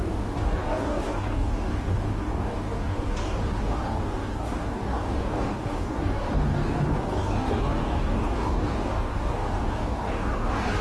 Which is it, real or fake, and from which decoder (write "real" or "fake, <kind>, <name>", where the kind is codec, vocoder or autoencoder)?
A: fake, codec, DAC